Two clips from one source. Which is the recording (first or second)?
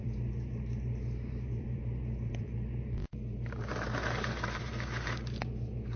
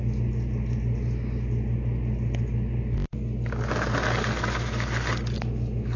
second